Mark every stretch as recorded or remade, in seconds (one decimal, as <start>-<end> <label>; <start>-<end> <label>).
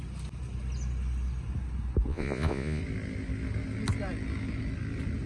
0.0-2.1 recorded; 2.1-2.8 remade; 2.8-5.3 recorded